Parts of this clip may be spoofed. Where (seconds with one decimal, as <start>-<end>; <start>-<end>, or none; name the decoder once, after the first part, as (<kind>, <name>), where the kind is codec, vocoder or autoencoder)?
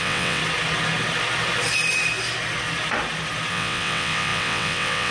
0.0-0.4 (vocoder, WaveNeXt); 3.5-5.1